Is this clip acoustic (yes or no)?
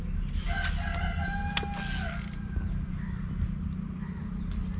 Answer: yes